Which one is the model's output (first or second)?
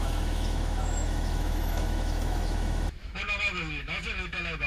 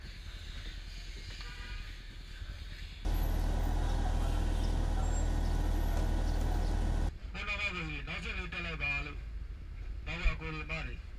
first